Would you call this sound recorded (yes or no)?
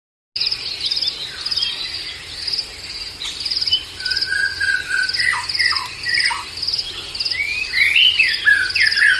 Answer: yes